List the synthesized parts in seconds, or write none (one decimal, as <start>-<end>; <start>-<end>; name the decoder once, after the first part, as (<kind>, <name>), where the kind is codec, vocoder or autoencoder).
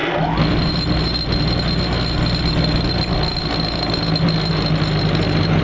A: none